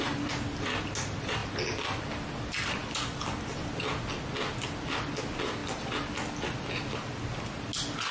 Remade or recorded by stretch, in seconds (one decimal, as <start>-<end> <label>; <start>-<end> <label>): 0.0-8.1 recorded